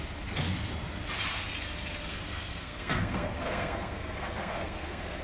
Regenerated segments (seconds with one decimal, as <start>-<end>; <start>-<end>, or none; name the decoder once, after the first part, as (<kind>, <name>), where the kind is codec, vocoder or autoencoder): 2.1-5.2 (codec, SNAC)